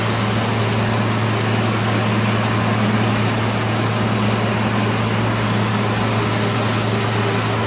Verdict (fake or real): real